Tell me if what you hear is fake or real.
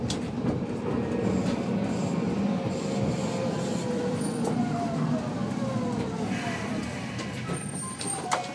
fake